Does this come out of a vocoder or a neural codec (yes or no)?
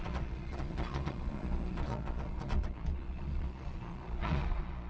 yes